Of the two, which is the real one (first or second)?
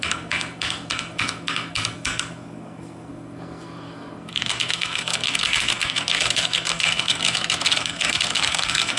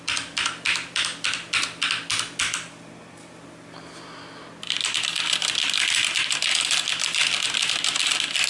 second